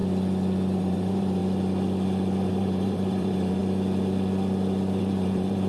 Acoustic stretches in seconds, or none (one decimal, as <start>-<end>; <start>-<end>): 0.0-0.8; 1.4-2.5; 3.6-5.0